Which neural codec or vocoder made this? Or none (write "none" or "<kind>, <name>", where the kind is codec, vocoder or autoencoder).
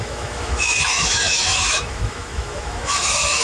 autoencoder, DAC-VAE